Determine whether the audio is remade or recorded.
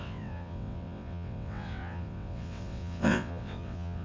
remade